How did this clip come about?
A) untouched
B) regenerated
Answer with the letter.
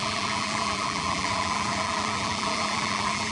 B